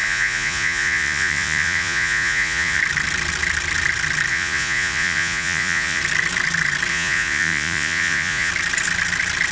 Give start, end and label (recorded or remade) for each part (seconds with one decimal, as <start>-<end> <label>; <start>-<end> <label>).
0.0-2.8 remade; 2.8-4.3 recorded; 4.3-6.0 remade; 6.0-6.9 recorded; 6.9-8.5 remade; 8.5-9.5 recorded